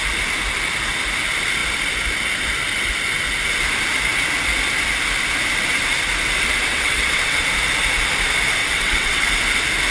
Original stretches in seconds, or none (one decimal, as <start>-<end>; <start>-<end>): 0.0-6.7; 7.4-8.6; 9.3-9.9